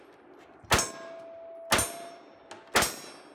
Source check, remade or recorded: recorded